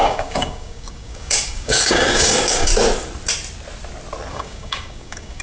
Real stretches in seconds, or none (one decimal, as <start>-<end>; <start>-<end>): 2.7-4.3